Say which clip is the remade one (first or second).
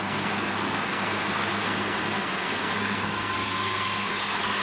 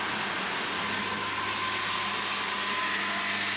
first